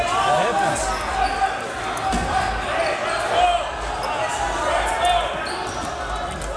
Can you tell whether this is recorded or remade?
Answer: recorded